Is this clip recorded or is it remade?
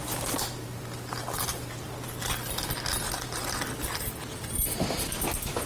recorded